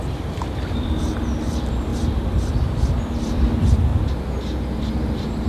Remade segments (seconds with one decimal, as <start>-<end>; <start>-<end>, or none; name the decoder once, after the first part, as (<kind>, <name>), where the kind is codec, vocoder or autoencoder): 0.0-1.9 (vocoder, BigVGAN v2); 2.5-3.9; 4.9-5.5